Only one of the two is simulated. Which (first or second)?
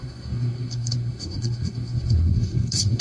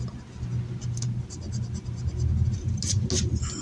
first